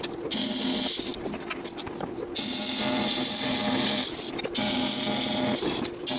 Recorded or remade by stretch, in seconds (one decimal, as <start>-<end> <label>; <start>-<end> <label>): 0.0-6.2 recorded

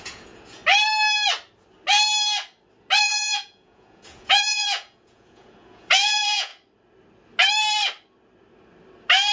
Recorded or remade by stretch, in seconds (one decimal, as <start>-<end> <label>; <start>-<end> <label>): 0.0-0.6 remade; 0.6-3.0 recorded; 3.0-6.5 remade; 6.5-9.3 recorded

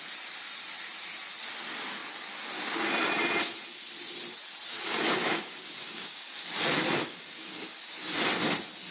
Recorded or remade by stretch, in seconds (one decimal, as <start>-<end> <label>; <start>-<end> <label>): 0.0-4.7 recorded; 4.7-6.4 remade; 6.4-7.0 recorded; 7.0-7.8 remade; 7.8-8.9 recorded

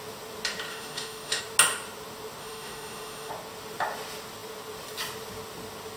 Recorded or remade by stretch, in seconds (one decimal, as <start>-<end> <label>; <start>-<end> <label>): 0.0-0.7 recorded; 0.7-1.4 remade; 1.4-2.4 recorded; 2.4-3.3 remade; 3.3-6.0 recorded

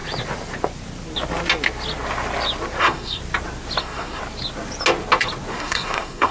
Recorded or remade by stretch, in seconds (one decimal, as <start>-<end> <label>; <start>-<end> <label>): 0.0-2.8 recorded; 2.8-3.2 remade; 3.2-3.8 recorded; 3.8-4.2 remade; 4.2-5.5 recorded; 5.5-6.3 remade

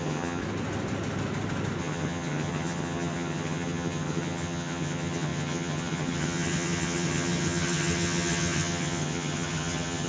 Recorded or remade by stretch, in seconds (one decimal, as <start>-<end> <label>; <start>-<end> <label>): 0.0-0.4 remade; 0.4-1.8 recorded; 1.8-10.1 remade

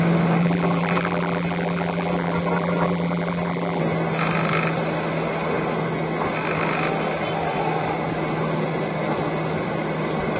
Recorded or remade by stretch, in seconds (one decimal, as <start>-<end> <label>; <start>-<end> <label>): 0.0-0.4 recorded; 0.4-3.8 remade; 3.8-10.4 recorded